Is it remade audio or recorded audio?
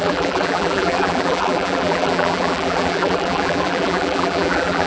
remade